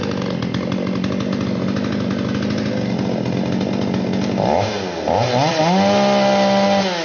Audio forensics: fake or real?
real